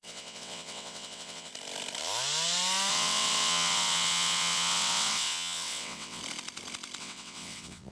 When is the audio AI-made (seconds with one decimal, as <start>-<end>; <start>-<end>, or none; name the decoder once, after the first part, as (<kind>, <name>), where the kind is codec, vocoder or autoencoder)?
0.0-1.5 (vocoder, WaveNeXt); 2.9-6.2; 7.0-7.9